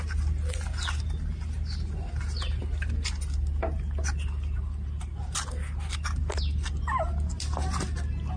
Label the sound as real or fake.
real